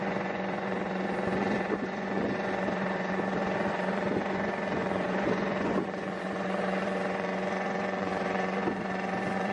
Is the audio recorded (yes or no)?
no